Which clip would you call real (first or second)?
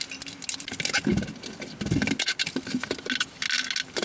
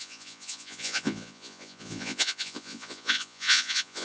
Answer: first